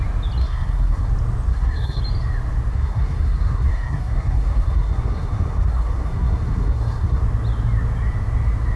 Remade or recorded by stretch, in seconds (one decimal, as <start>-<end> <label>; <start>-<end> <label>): 0.0-0.4 recorded; 0.4-1.1 remade; 1.1-1.5 recorded; 1.5-2.0 remade; 2.0-2.7 recorded; 2.7-7.2 remade; 7.2-8.8 recorded